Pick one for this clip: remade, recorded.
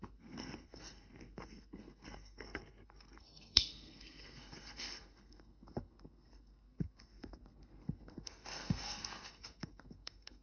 remade